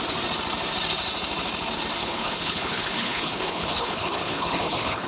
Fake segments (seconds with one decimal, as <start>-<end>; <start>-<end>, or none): 2.0-5.1